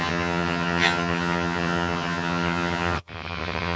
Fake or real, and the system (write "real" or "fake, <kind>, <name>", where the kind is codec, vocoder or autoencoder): fake, vocoder, HiFi-GAN